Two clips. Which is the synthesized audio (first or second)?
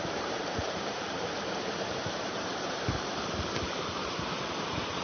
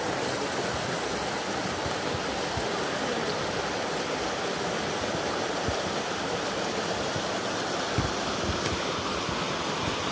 first